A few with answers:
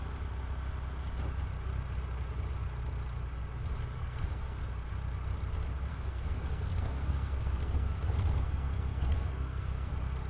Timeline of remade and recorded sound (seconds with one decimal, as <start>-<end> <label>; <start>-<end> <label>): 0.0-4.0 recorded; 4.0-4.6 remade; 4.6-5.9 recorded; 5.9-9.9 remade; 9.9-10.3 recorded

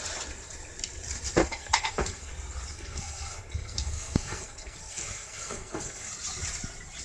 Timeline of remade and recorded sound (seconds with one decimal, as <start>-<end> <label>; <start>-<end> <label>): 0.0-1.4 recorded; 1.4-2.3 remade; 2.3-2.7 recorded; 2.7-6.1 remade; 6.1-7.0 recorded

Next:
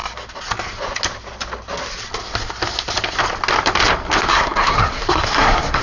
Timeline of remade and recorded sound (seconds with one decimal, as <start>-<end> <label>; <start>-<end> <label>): 0.0-4.3 recorded; 4.3-5.8 remade

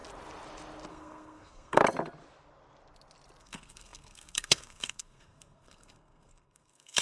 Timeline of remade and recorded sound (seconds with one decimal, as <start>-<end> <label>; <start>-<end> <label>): 0.0-0.9 recorded; 0.9-1.8 remade; 1.8-3.4 recorded; 3.4-7.0 remade

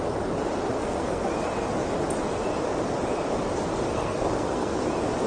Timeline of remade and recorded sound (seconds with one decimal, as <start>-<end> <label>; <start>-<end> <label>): 0.0-0.7 recorded; 0.7-1.3 remade; 1.3-3.9 recorded; 3.9-4.8 remade; 4.8-5.3 recorded

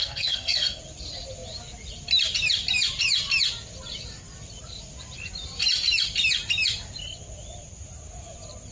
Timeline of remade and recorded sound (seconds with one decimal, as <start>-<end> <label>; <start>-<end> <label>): 0.0-0.8 remade; 0.8-8.7 recorded